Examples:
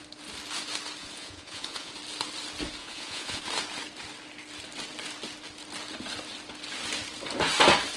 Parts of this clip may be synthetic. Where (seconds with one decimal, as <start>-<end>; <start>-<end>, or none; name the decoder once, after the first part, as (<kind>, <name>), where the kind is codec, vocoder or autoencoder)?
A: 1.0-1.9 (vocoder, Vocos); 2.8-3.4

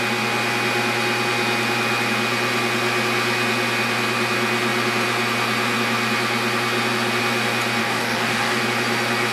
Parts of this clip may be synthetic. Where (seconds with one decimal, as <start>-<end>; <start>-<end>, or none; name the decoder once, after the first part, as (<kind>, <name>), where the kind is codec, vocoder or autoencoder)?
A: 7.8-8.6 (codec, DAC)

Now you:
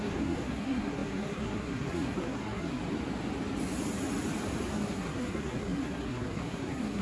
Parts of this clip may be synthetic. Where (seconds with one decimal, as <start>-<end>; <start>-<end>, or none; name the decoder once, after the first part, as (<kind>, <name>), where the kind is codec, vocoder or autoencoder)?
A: 0.0-2.8 (codec, SNAC); 4.7-7.0

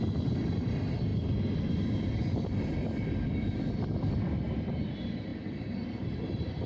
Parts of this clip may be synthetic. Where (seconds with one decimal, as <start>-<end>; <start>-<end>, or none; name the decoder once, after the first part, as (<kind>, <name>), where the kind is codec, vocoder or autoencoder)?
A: 0.0-6.7 (vocoder, BigVGAN v2)